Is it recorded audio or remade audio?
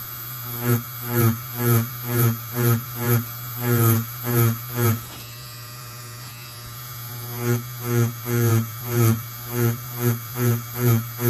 remade